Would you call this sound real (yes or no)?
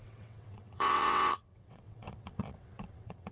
no